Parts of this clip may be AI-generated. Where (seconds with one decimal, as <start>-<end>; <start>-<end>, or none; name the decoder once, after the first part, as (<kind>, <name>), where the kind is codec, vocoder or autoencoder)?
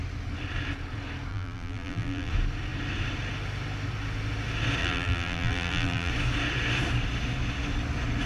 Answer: 1.3-2.3 (vocoder, BigVGAN v2); 4.8-6.1